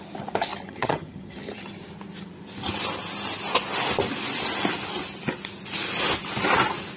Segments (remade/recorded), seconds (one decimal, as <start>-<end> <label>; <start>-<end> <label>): 0.0-0.5 recorded; 0.5-1.7 remade; 1.7-7.0 recorded